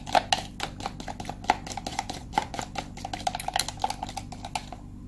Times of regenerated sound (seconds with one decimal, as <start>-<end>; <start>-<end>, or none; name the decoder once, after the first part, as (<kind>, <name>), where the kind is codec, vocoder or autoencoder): 1.9-2.6 (vocoder, Vocos)

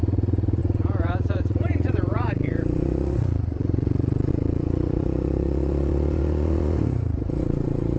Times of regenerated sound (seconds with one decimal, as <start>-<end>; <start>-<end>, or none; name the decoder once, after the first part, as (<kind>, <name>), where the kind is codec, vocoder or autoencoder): 0.0-8.0 (vocoder, Vocos)

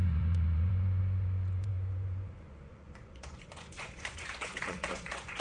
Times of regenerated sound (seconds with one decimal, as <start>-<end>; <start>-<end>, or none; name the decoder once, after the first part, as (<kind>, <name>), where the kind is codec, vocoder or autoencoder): 0.0-5.4 (vocoder, Vocos)

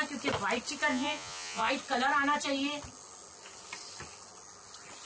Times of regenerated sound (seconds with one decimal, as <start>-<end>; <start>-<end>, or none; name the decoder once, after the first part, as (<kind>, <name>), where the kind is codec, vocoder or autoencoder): 0.9-1.7 (vocoder, Vocos)

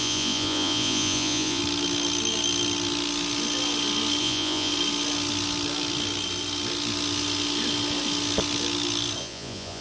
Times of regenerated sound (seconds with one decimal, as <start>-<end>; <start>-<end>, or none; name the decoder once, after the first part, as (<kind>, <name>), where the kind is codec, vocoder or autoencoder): 0.0-1.6 (vocoder, Vocos); 4.2-4.7; 9.2-9.8

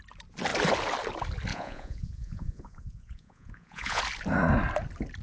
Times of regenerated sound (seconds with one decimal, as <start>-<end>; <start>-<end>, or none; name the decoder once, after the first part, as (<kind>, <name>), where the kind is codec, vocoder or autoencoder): 1.5-4.0 (vocoder, Vocos)